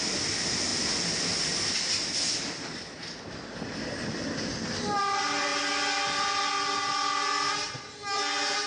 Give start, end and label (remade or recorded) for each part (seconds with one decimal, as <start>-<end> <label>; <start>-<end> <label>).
0.0-8.7 recorded